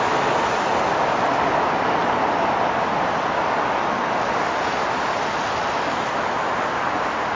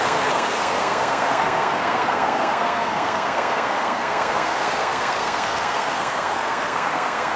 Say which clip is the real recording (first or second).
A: first